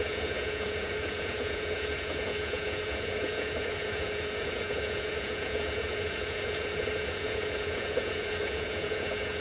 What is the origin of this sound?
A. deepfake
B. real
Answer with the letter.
A